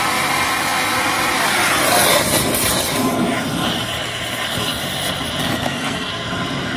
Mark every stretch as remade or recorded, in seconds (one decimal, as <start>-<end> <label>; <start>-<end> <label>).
0.0-5.4 recorded; 5.4-6.1 remade; 6.1-6.8 recorded